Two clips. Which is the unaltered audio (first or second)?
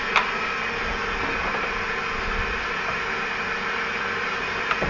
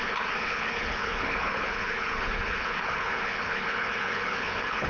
first